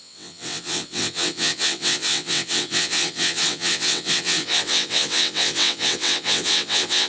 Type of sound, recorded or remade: remade